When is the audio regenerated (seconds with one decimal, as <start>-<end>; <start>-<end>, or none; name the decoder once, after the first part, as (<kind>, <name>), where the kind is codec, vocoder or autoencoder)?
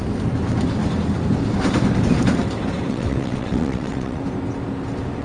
2.9-4.2 (vocoder, WaveNeXt)